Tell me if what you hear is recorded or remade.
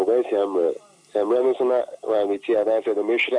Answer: recorded